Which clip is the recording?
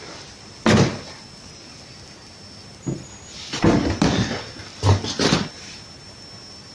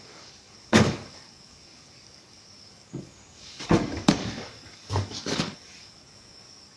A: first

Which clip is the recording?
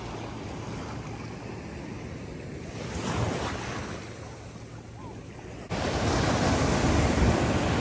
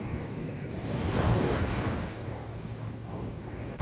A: first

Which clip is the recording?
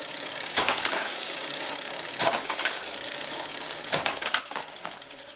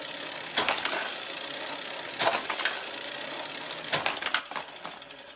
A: second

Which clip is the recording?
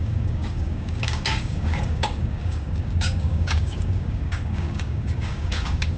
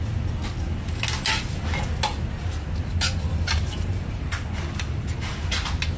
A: second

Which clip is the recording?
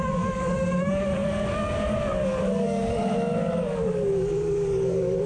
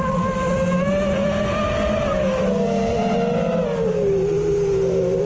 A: second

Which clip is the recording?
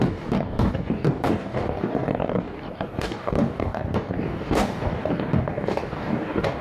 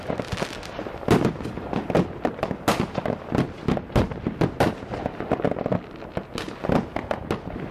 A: second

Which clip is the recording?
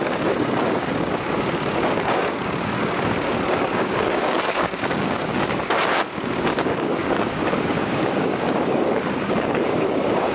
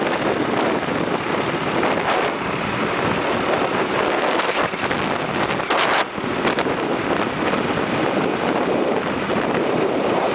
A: second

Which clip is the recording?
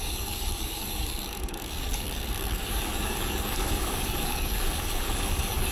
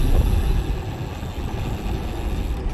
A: second